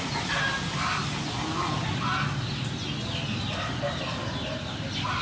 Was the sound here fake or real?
real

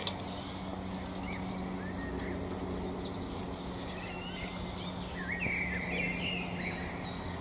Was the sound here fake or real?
real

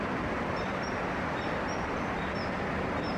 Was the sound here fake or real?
real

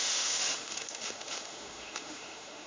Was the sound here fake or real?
fake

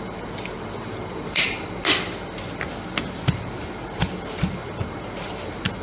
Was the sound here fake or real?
real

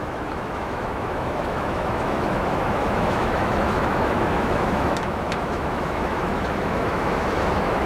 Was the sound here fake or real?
fake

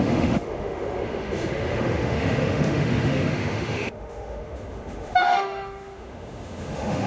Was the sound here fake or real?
fake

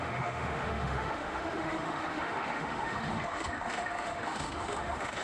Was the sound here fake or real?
fake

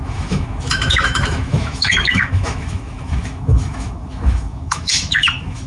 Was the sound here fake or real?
fake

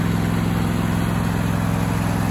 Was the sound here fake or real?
real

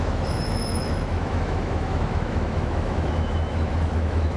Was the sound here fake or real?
fake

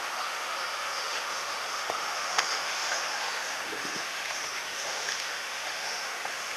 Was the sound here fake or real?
fake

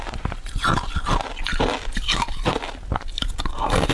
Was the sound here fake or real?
real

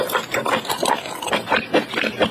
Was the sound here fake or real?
real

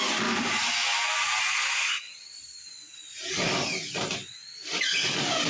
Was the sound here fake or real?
real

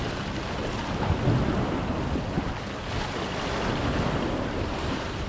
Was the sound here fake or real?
real